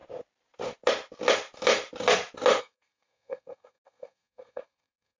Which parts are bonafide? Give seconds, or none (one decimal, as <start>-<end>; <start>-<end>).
0.0-2.6

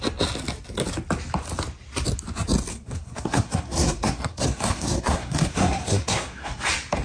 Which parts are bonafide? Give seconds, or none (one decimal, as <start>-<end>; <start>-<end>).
0.0-2.7; 6.6-7.0